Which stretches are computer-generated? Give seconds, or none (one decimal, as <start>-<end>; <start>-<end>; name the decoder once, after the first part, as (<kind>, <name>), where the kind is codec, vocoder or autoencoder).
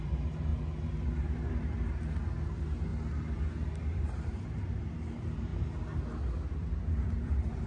0.0-0.5 (vocoder, BigVGAN v2); 1.2-2.9; 3.9-5.5; 6.5-7.7